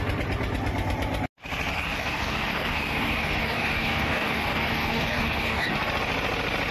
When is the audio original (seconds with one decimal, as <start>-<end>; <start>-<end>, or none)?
0.0-1.7; 5.7-6.7